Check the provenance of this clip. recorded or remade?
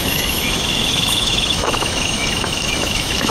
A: remade